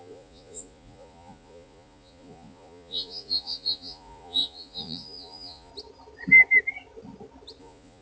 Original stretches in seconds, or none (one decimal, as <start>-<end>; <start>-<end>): 5.7-7.6